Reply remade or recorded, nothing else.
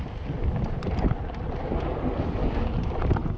recorded